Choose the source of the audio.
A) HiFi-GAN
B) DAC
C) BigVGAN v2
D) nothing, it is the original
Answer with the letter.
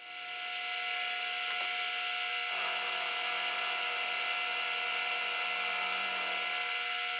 D